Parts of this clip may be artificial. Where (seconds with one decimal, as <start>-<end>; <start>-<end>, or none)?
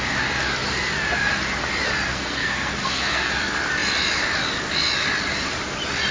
2.1-3.3